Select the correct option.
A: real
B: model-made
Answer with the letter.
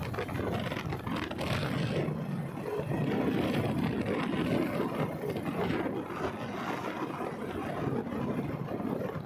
A